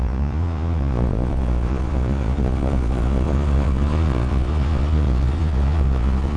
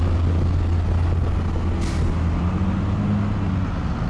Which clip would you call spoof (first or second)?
first